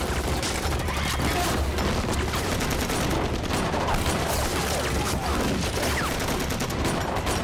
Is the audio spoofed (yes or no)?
no